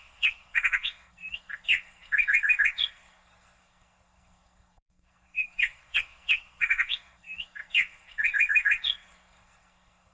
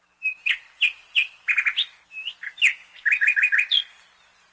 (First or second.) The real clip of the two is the second